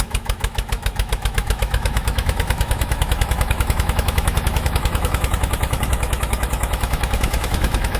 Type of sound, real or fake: fake